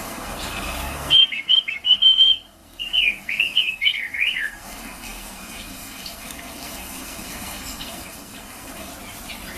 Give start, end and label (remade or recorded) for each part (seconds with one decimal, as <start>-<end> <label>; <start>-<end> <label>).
0.0-8.9 remade; 8.9-9.6 recorded